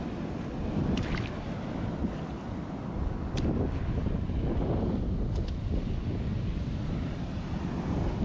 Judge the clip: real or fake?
real